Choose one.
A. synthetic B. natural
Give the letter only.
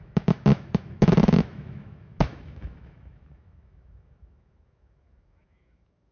A